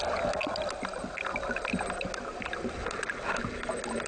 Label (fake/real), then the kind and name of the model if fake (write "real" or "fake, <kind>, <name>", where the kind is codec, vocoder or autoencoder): real